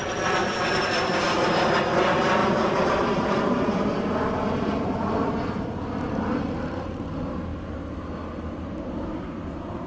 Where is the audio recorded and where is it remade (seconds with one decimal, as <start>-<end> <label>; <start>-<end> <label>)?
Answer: 0.0-0.4 recorded; 0.4-1.2 remade; 1.2-2.4 recorded; 2.4-5.1 remade; 5.1-9.9 recorded